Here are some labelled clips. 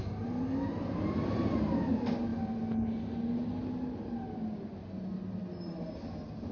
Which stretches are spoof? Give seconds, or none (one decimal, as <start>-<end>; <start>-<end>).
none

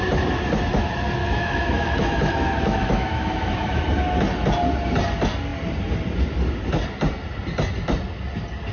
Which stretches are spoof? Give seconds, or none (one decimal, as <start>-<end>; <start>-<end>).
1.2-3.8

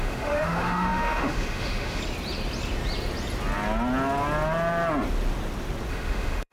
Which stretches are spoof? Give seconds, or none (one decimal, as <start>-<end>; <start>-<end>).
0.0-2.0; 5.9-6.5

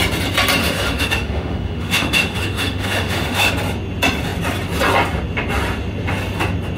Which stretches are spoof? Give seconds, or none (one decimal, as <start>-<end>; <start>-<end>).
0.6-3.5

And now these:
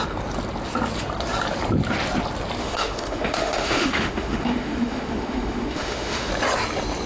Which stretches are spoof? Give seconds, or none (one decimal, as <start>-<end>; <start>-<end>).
2.6-6.3

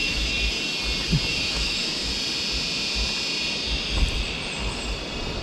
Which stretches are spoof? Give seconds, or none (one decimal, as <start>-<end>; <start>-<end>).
0.0-0.5; 1.3-2.1

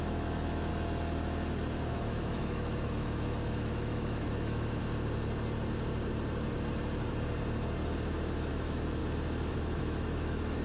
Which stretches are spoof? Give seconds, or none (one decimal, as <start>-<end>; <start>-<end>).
0.0-0.7; 1.9-4.8; 8.5-9.0; 9.5-10.6